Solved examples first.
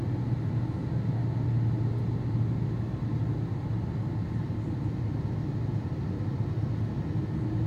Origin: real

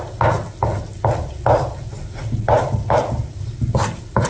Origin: real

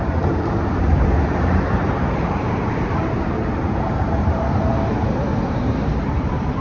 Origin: fake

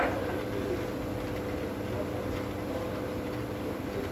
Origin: real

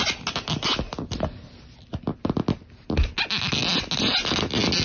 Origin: real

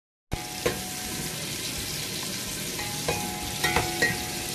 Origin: real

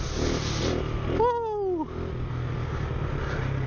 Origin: real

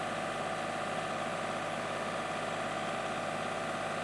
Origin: real